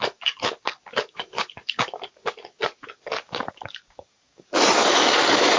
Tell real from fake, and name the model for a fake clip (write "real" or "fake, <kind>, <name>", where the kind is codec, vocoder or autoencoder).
fake, codec, DAC